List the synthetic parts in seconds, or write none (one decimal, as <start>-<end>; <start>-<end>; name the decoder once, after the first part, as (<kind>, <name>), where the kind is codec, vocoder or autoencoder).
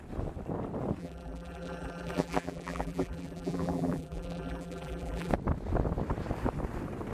1.0-5.3 (vocoder, BigVGAN v2)